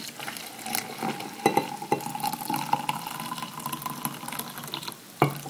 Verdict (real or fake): real